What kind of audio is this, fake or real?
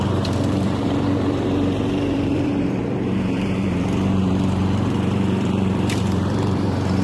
fake